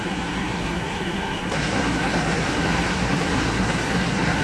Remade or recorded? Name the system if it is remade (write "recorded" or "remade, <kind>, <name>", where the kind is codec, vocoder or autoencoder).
remade, codec, SNAC